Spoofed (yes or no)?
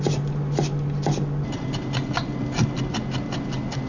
no